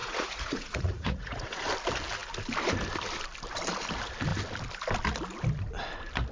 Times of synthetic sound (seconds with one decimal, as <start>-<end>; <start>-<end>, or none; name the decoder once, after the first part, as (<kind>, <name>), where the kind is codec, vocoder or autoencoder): 0.0-1.6 (vocoder, Vocos)